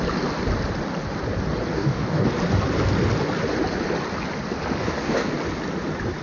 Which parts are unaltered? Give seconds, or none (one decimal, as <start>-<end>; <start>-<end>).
0.0-1.7; 2.3-4.8; 5.3-6.2